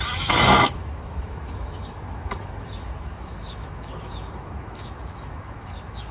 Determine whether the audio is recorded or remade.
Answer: remade